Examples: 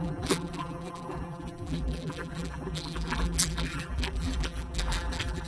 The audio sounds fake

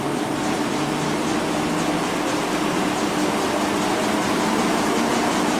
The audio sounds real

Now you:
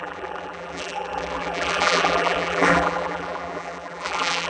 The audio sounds fake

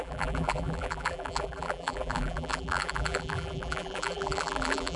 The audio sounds fake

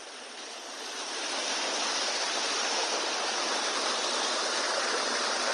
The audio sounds real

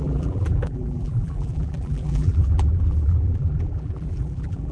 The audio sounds fake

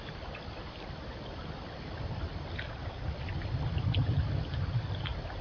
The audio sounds real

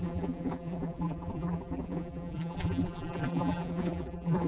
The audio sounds fake